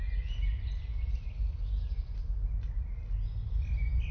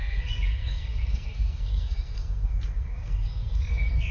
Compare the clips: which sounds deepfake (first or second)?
second